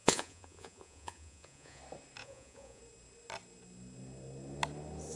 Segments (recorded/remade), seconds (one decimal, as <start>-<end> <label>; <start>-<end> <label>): 0.0-1.8 remade; 1.8-2.2 recorded; 2.2-2.8 remade; 2.8-5.2 recorded